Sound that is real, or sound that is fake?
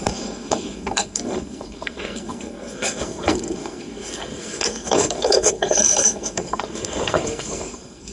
fake